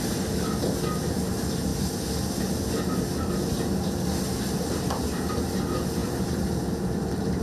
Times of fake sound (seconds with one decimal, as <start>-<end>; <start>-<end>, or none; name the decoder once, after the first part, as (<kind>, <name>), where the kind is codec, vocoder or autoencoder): none